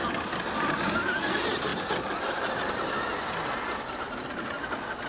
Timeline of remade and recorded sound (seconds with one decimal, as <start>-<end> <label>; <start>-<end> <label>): 0.0-5.1 recorded